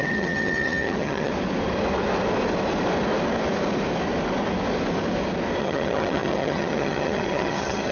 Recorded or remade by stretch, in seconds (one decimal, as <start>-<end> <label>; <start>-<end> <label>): 0.0-1.3 remade; 1.3-5.6 recorded; 5.6-7.9 remade